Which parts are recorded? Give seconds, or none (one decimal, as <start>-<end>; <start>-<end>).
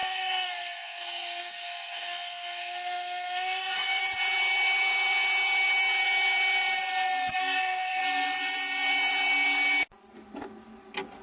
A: 4.0-7.4; 8.0-11.2